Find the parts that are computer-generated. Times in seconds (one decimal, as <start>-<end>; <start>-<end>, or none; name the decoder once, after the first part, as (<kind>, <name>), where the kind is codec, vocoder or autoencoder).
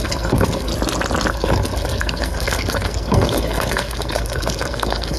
0.0-0.7 (codec, SNAC); 1.3-5.2